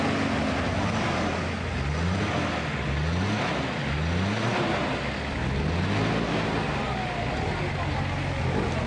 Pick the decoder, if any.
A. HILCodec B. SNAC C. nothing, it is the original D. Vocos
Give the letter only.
C